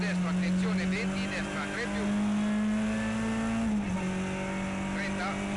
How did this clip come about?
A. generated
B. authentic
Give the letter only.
B